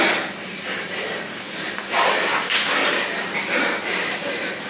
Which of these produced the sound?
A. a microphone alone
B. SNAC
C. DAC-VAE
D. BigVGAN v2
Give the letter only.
A